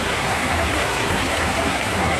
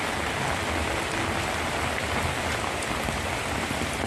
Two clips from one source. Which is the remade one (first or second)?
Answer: first